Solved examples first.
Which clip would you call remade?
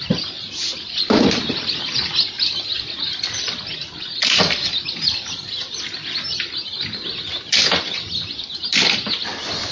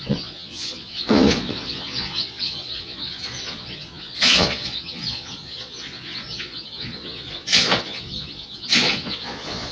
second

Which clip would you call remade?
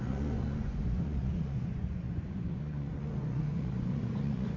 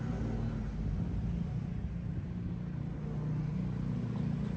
first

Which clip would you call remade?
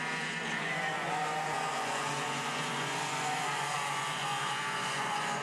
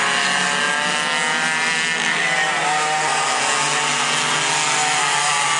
first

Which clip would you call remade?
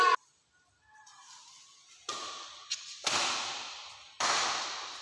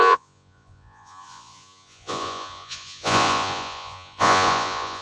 second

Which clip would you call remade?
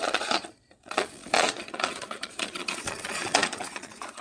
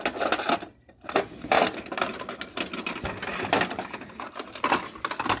first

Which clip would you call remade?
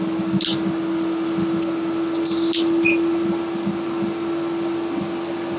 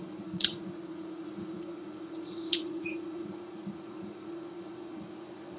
second